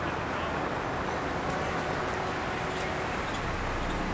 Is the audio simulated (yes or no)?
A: no